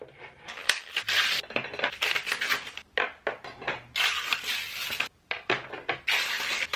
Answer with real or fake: real